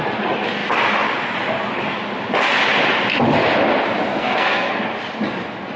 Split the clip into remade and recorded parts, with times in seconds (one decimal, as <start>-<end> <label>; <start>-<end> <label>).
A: 0.0-4.1 recorded; 4.1-4.7 remade; 4.7-5.8 recorded